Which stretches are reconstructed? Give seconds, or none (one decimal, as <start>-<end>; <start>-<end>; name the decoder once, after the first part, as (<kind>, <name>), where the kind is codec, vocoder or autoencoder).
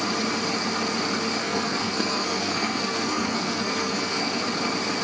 1.4-4.4 (codec, SNAC)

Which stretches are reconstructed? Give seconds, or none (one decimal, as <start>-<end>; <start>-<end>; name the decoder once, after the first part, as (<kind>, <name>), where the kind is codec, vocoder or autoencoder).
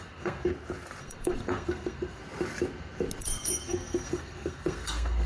0.0-0.5 (codec, SNAC); 1.0-2.2; 3.2-5.3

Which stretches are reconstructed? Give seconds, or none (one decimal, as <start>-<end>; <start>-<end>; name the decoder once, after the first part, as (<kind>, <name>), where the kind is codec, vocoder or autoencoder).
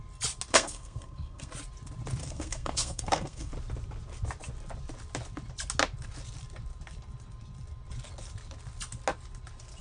0.5-1.5 (codec, SNAC); 2.2-3.5